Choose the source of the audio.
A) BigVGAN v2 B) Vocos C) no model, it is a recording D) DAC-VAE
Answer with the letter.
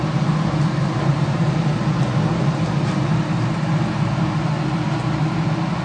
C